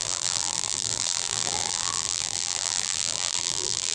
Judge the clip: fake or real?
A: fake